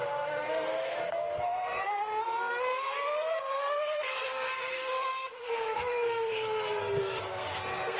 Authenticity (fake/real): fake